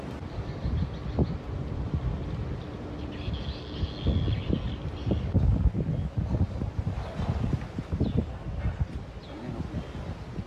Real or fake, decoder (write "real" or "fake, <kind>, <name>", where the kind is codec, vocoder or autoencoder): real